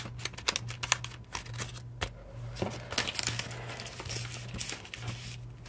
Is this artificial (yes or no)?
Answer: no